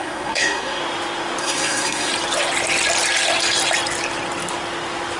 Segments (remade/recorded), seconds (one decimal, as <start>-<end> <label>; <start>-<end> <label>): 0.0-0.8 remade; 0.8-1.4 recorded; 1.4-2.1 remade; 2.1-5.2 recorded